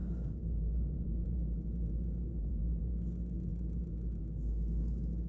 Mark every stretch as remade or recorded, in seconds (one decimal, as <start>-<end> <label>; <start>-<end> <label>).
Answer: 0.0-2.9 remade; 2.9-3.5 recorded; 3.5-4.2 remade; 4.2-5.3 recorded